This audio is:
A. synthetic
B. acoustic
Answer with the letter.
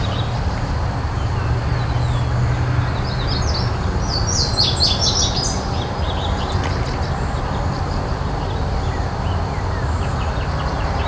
B